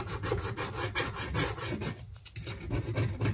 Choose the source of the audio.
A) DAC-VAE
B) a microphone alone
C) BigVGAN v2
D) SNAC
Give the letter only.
B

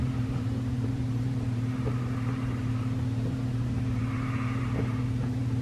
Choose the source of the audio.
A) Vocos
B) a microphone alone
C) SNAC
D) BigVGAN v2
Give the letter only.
D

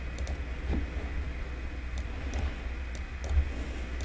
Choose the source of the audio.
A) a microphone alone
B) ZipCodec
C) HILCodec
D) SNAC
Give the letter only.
A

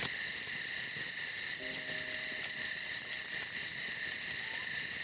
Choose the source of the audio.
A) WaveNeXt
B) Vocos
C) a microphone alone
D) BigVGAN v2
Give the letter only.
C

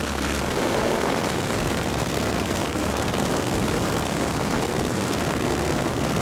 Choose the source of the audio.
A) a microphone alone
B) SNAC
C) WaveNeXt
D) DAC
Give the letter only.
B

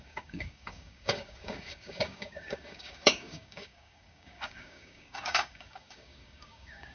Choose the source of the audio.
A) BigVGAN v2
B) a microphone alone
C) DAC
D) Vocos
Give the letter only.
C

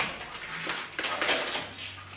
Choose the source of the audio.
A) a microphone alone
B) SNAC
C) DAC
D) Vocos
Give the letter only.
A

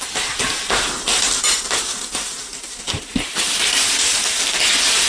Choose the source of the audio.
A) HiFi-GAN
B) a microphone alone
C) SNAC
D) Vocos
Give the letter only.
B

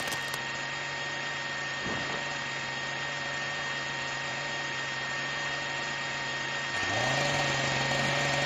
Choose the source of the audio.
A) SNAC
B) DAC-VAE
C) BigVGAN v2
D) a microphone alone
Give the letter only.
D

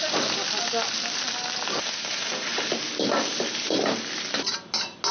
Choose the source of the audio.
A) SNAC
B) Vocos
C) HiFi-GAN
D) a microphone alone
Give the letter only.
D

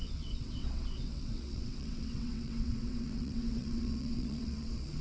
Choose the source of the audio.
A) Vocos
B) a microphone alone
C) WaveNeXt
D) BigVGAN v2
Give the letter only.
C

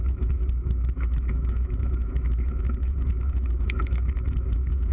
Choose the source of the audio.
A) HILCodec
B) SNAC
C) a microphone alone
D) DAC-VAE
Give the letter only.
D